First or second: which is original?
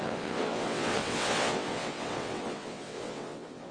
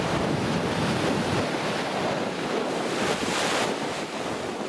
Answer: second